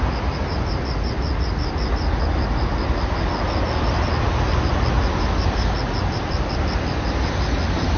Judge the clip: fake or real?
real